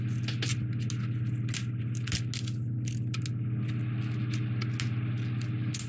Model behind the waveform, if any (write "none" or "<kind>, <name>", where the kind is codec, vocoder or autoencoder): none